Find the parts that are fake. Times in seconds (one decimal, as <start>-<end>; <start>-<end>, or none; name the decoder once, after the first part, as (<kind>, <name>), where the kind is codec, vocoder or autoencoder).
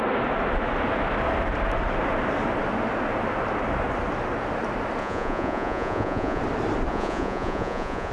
5.0-6.4 (vocoder, Vocos); 6.9-8.1